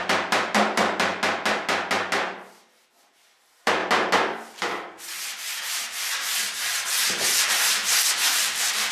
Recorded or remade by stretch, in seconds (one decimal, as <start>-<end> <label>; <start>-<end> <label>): 0.0-1.1 remade; 1.1-3.0 recorded; 3.0-3.8 remade; 3.8-5.6 recorded; 5.6-6.3 remade; 6.3-6.9 recorded; 6.9-7.8 remade; 7.8-8.3 recorded; 8.3-8.9 remade